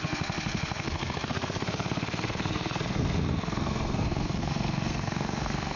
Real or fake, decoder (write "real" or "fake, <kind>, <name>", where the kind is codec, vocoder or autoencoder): fake, codec, SNAC